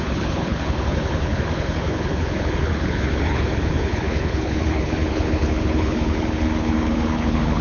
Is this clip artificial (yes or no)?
yes